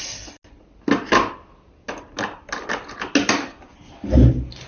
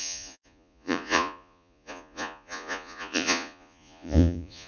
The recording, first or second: first